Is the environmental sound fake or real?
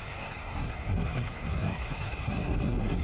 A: fake